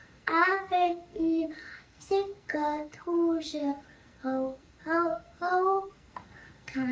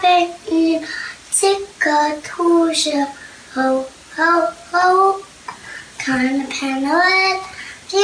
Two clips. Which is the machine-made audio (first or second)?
first